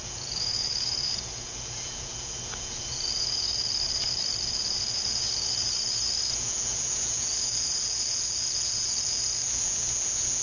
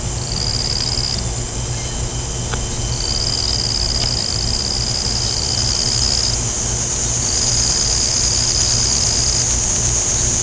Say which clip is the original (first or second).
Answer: second